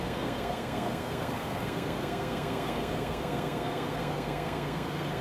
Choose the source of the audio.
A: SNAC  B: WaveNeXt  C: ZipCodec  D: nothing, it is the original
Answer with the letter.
A